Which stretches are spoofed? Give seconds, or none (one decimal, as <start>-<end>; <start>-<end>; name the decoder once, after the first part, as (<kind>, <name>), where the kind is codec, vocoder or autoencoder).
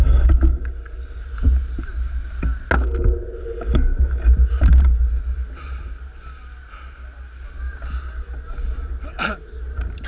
3.9-4.5 (vocoder, BigVGAN v2)